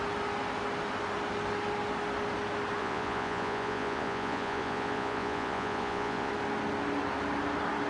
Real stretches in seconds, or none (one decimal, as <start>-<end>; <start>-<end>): 0.0-2.8; 6.3-7.9